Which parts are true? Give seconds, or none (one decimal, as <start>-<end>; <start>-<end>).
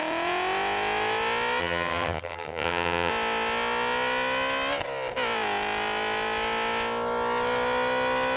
0.0-1.6; 3.1-8.4